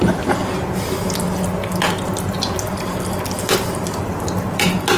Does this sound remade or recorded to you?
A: recorded